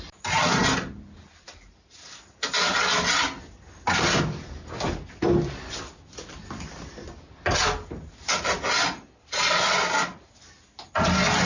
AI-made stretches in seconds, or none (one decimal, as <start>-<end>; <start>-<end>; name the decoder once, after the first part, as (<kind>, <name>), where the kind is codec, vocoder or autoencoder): none